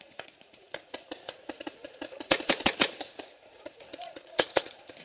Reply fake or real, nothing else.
fake